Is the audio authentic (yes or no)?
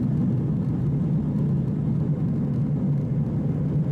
yes